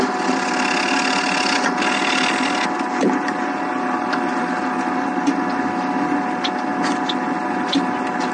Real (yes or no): yes